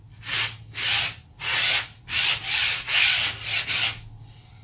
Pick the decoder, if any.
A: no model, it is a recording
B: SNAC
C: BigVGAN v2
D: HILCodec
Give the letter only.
A